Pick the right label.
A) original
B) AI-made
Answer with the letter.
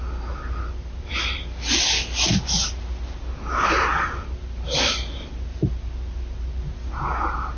A